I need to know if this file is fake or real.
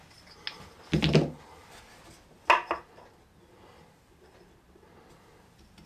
real